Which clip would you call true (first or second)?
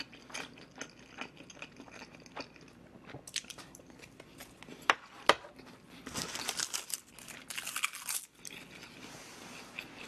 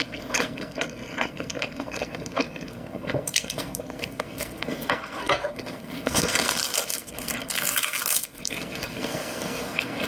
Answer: first